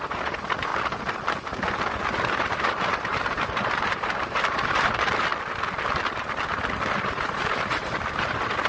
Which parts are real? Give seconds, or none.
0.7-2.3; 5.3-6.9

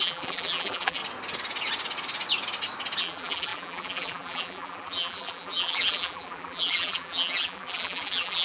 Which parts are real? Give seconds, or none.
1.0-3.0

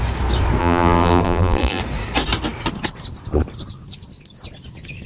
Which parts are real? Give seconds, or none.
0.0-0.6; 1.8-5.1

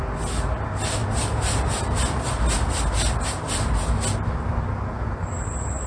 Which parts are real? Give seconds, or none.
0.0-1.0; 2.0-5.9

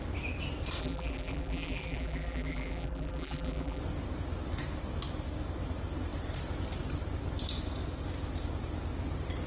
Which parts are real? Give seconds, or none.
0.0-0.8; 3.8-9.5

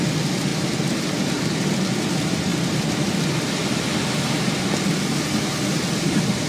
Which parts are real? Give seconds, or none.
0.0-6.5

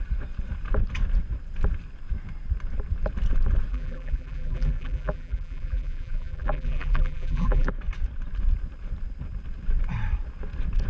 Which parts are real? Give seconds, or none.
0.0-3.7; 7.7-10.9

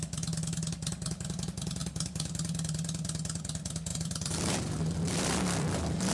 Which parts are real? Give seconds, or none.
0.0-1.8; 3.4-3.9